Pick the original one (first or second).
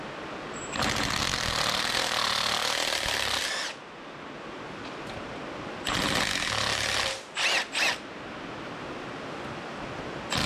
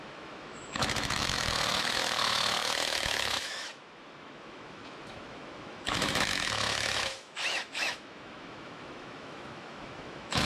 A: first